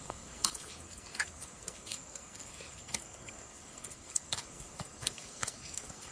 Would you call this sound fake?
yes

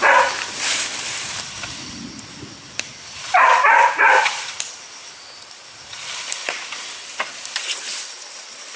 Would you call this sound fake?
yes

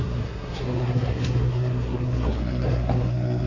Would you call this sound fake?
yes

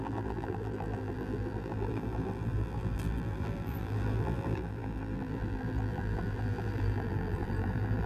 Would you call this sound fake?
yes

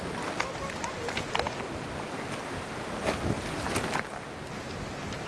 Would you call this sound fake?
no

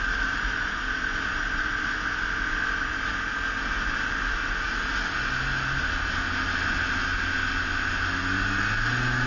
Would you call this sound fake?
no